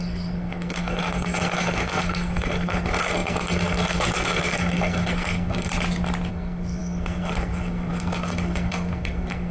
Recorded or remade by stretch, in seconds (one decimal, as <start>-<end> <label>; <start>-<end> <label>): 0.0-5.7 remade; 5.7-6.3 recorded; 6.3-9.5 remade